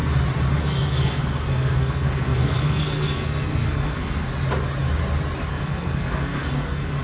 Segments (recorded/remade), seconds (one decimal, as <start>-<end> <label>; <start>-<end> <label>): 0.0-0.6 recorded; 0.6-4.3 remade; 4.3-5.5 recorded; 5.5-7.0 remade